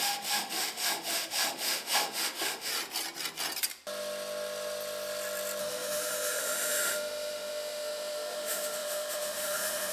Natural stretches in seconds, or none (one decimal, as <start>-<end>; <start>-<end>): 2.7-5.6